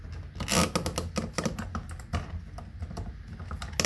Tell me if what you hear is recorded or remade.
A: recorded